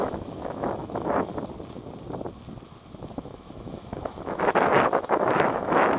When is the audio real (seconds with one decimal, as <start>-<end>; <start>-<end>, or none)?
1.3-3.1